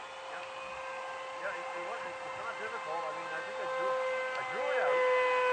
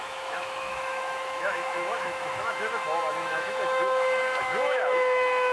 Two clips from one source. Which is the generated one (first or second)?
second